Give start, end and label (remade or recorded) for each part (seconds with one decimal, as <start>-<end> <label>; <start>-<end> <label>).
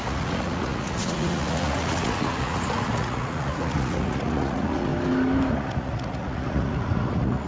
0.0-4.9 remade; 4.9-5.5 recorded; 5.5-7.5 remade